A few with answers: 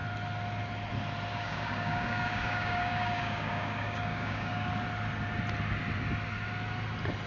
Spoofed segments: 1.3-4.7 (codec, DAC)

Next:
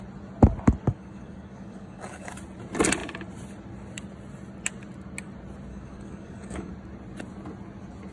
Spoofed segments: 0.9-2.3 (codec, DAC); 5.7-6.7

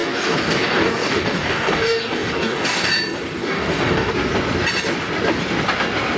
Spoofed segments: 0.0-2.9 (codec, DAC); 3.4-4.1

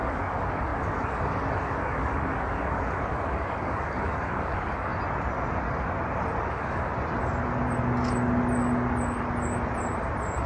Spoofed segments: 0.0-4.9 (codec, DAC); 6.5-6.9

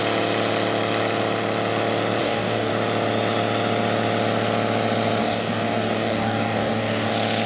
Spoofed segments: 2.2-2.7 (codec, DAC); 5.2-7.1